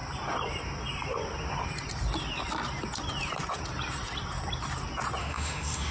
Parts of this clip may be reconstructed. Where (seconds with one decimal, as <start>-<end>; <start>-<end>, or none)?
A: 5.2-5.9